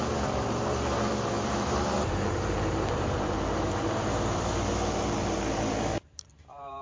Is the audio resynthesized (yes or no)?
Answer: yes